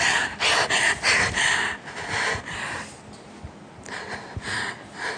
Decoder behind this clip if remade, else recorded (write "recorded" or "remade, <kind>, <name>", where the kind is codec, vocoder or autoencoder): recorded